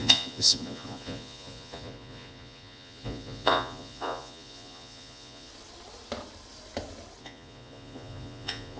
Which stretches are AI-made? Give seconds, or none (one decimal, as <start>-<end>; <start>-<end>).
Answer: 0.0-5.5; 7.2-8.8